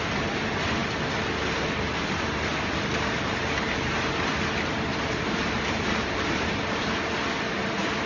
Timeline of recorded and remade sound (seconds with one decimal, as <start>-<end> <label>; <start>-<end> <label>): 0.0-4.9 recorded; 4.9-7.1 remade; 7.1-8.1 recorded